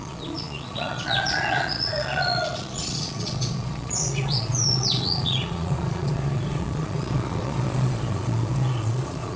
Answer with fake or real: fake